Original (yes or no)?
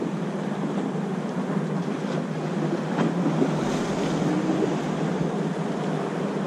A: yes